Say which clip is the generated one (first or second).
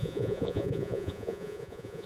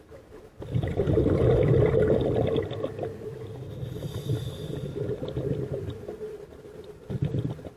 first